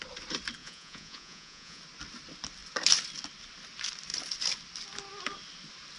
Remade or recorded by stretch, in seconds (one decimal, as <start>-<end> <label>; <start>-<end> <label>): 0.0-0.6 recorded; 0.6-1.8 remade; 1.8-6.0 recorded